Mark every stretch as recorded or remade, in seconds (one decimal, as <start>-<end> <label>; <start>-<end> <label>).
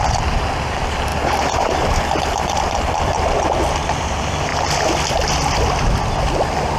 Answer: 0.0-6.8 recorded